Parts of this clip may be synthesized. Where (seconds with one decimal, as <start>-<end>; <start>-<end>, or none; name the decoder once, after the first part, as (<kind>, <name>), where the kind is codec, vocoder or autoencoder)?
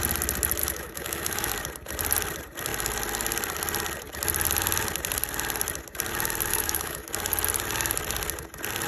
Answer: 0.6-1.5 (autoencoder, DAC-VAE); 6.5-7.1